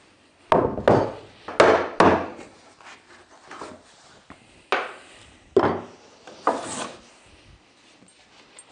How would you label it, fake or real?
real